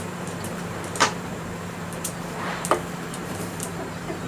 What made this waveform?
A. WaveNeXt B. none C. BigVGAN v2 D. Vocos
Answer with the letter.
C